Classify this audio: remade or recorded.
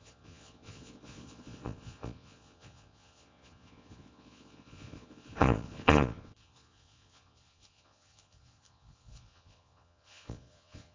remade